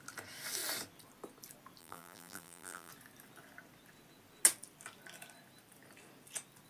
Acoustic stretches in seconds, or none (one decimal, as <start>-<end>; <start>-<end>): 0.0-1.8; 2.9-6.7